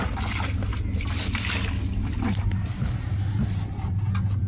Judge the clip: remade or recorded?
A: recorded